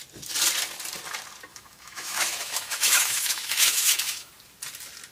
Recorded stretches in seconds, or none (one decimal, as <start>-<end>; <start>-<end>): 0.0-1.5; 4.3-5.1

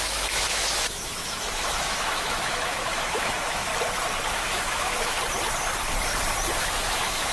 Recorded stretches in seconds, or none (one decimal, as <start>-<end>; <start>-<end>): 3.7-4.3; 5.2-6.5